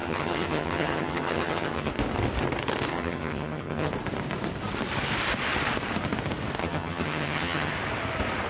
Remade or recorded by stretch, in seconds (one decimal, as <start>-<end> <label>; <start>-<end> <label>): 0.0-1.9 remade; 1.9-2.9 recorded; 2.9-3.9 remade; 3.9-6.6 recorded; 6.6-7.7 remade; 7.7-8.5 recorded